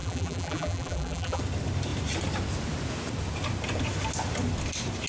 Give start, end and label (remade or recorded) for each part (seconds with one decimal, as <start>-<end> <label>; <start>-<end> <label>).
0.0-1.4 remade; 1.4-5.1 recorded

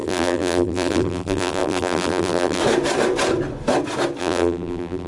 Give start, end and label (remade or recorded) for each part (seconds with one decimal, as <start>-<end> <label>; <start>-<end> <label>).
0.0-2.6 remade; 2.6-4.2 recorded; 4.2-5.1 remade